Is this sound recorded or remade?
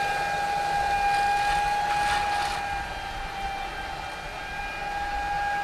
recorded